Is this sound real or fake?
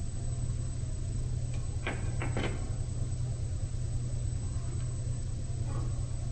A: real